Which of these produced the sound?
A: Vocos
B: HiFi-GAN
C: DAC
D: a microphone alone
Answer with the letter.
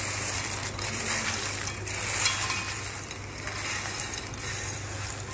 D